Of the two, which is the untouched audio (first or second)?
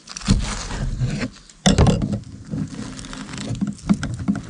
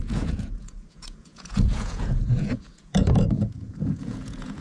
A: first